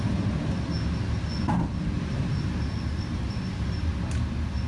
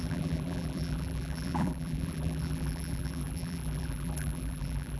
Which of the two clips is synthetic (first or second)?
second